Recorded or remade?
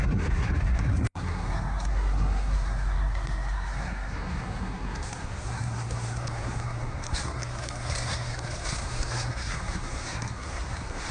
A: remade